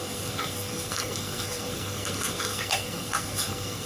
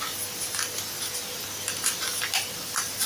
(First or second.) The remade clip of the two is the first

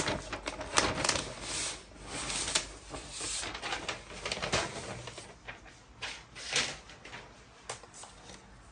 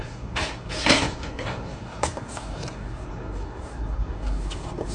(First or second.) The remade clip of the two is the second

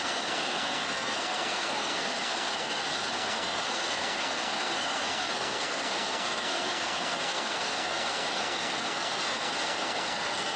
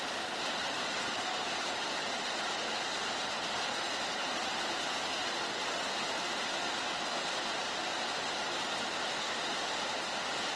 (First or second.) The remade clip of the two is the first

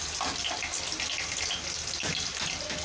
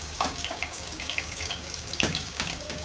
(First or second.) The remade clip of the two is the second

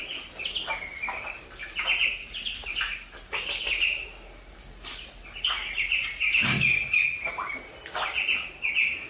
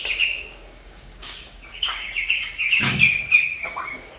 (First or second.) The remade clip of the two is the second